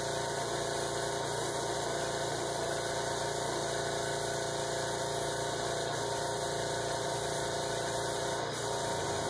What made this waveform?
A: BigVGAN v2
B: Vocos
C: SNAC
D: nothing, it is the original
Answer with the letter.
D